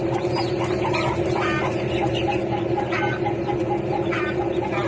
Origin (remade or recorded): recorded